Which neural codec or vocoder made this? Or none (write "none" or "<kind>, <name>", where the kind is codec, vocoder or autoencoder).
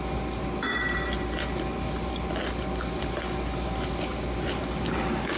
none